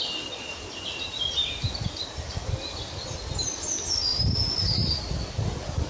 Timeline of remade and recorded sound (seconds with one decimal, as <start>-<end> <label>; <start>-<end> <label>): 0.0-5.9 recorded